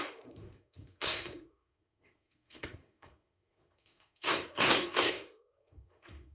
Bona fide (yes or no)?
no